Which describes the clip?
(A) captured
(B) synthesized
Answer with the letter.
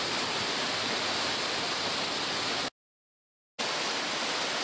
A